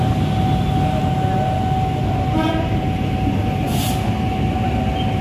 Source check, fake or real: real